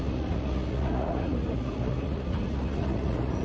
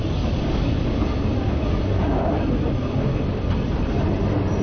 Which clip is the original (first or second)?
second